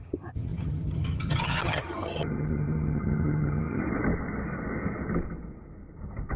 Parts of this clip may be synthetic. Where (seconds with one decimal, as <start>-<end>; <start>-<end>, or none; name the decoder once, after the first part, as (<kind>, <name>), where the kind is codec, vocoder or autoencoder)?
0.0-3.8 (vocoder, HiFi-GAN)